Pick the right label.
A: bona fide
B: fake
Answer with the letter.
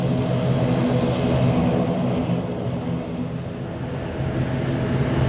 A